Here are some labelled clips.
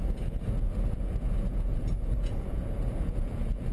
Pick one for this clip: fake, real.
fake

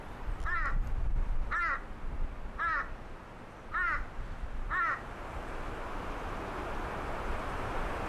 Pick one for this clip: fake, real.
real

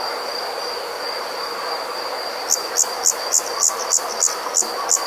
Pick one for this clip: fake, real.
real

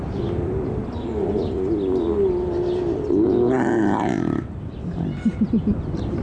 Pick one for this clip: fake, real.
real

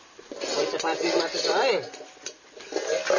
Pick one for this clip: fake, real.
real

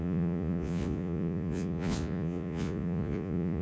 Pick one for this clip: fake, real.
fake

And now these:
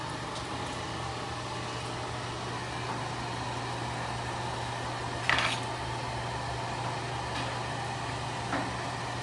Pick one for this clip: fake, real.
real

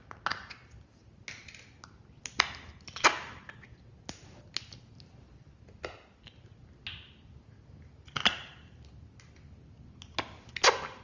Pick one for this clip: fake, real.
real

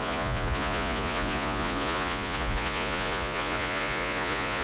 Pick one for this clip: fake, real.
fake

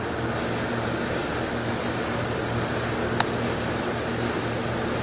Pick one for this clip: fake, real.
real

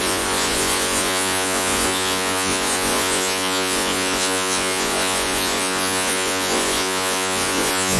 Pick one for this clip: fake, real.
fake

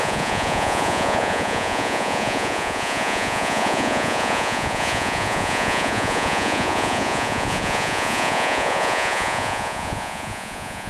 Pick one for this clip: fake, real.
fake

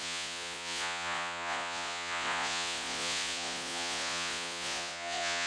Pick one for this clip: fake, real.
fake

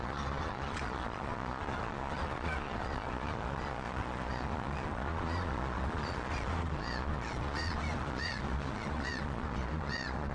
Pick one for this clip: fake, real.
fake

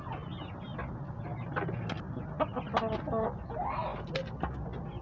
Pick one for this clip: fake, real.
real